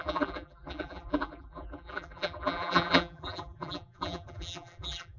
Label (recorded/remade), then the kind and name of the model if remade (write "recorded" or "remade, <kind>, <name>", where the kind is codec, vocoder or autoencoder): remade, vocoder, BigVGAN v2